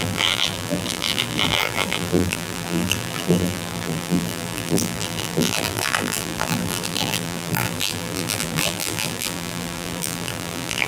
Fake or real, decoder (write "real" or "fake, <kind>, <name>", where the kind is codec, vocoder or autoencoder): fake, vocoder, BigVGAN v2